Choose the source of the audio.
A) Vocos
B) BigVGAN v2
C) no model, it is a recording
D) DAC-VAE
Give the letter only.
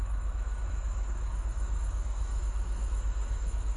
D